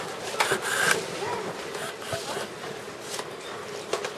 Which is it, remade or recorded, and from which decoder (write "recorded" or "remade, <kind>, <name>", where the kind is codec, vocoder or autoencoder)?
recorded